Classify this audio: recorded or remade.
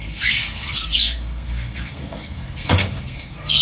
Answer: remade